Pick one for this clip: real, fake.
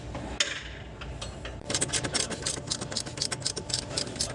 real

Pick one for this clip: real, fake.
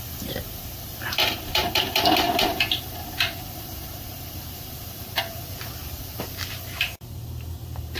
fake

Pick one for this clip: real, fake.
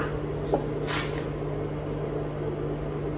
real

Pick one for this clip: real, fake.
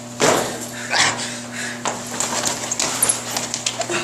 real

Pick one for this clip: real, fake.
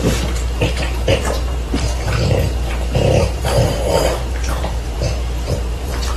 fake